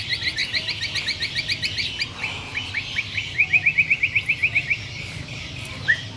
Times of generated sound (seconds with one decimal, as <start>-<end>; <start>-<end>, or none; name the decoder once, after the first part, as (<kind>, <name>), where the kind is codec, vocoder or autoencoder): none